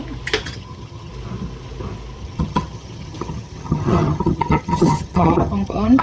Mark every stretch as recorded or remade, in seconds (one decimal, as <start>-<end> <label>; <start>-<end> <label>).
0.0-0.4 recorded; 0.4-1.1 remade; 1.1-2.2 recorded; 2.2-6.0 remade